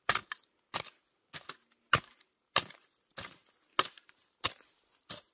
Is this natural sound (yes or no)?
yes